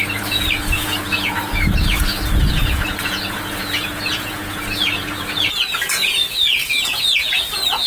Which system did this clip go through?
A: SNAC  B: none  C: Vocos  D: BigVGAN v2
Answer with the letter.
C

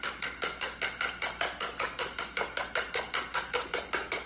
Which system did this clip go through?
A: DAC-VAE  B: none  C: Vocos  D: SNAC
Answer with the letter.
B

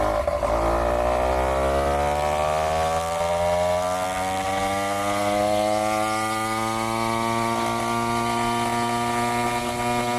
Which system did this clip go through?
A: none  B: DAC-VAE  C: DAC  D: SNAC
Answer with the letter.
A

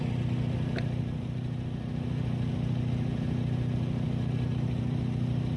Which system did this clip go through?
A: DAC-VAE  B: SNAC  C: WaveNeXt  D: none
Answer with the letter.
D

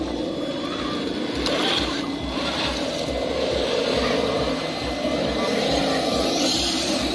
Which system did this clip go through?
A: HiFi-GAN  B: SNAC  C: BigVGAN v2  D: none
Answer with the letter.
D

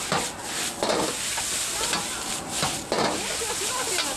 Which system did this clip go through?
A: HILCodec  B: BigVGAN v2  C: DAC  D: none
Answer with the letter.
D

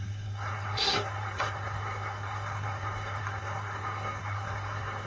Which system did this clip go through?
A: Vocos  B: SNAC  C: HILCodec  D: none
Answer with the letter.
B